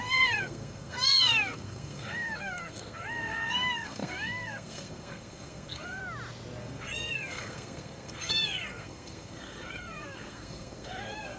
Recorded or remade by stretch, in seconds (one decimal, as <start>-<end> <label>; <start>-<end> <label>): 0.0-6.0 remade; 6.0-6.6 recorded; 6.6-11.4 remade